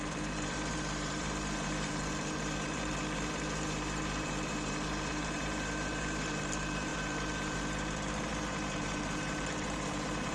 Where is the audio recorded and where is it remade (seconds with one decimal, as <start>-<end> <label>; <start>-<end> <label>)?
0.0-10.3 remade